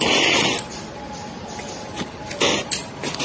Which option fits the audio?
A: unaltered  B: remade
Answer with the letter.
A